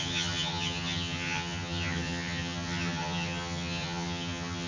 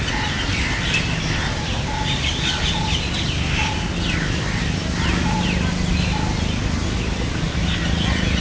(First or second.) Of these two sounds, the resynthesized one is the first